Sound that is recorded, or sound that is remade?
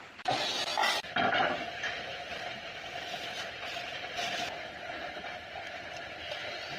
remade